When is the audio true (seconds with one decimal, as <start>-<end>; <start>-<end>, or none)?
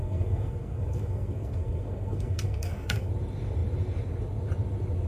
3.1-5.1